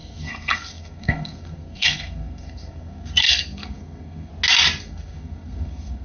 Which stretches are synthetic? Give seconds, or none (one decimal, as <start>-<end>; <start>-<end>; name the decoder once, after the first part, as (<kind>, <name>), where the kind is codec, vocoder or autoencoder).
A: 0.0-4.3 (codec, SNAC); 4.8-6.0